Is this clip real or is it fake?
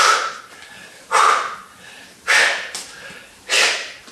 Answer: real